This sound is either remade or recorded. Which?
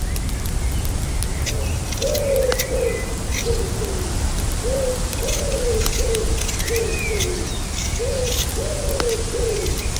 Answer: recorded